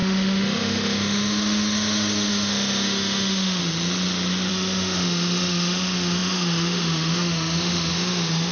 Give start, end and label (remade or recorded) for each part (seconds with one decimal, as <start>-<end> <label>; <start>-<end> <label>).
0.0-3.6 remade; 3.6-4.5 recorded; 4.5-8.5 remade